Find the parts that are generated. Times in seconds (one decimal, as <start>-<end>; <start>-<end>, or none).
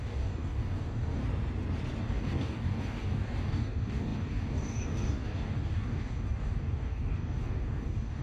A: 0.0-1.2; 2.0-8.2